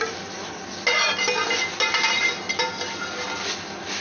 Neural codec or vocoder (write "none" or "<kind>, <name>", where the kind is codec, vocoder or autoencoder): none